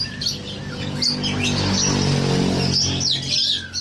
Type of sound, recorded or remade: recorded